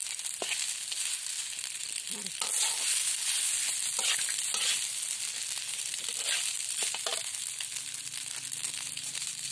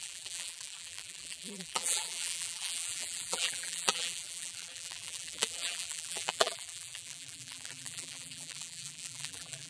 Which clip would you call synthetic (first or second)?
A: second